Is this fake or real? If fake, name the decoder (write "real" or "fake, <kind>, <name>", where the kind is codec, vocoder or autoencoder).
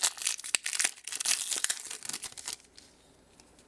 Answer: real